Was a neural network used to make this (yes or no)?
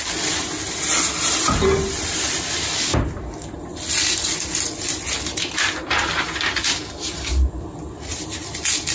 no